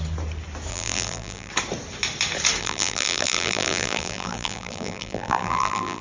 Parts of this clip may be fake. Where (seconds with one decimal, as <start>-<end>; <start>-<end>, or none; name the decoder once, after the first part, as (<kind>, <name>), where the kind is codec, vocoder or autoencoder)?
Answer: 0.7-1.5 (vocoder, BigVGAN v2); 2.6-6.0